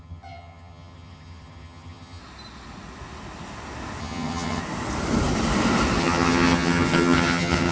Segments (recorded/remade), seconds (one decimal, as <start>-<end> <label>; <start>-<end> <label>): 0.0-2.2 remade; 2.2-4.0 recorded; 4.0-4.6 remade; 4.6-6.0 recorded; 6.0-7.7 remade